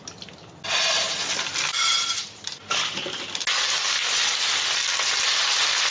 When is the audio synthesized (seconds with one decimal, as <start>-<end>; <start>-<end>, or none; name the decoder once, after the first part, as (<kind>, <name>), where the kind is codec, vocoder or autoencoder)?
none